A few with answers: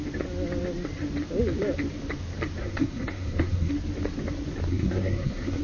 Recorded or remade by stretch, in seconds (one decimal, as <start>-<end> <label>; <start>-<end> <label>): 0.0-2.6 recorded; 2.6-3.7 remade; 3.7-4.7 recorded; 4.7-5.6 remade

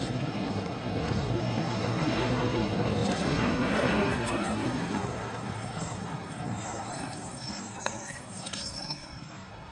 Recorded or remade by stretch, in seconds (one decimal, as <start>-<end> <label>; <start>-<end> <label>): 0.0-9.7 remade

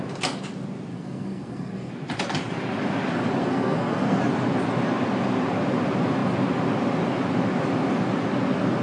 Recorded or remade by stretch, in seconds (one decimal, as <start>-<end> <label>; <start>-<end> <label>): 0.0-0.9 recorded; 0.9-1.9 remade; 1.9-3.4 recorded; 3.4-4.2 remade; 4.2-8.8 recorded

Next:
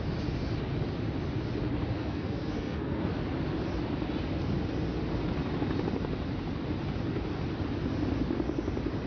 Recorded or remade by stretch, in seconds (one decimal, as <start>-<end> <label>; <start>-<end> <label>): 0.0-2.0 recorded; 2.0-3.1 remade; 3.1-9.1 recorded

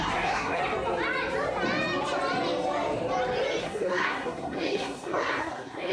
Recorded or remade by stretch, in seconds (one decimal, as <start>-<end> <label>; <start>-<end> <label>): 0.0-0.6 remade; 0.6-3.6 recorded; 3.6-5.9 remade

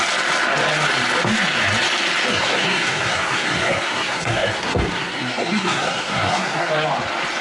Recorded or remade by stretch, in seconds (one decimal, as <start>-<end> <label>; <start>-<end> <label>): 0.0-2.3 recorded; 2.3-6.7 remade; 6.7-7.4 recorded